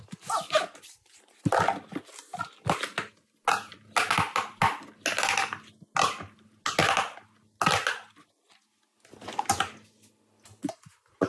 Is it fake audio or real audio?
real